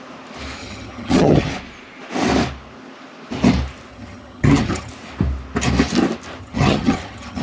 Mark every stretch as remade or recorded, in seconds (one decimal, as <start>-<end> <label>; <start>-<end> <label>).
0.0-0.6 recorded; 0.6-1.5 remade; 1.5-3.9 recorded; 3.9-4.9 remade; 4.9-6.4 recorded; 6.4-7.4 remade